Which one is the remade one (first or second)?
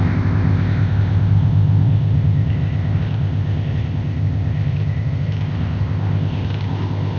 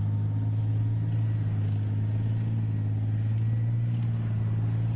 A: first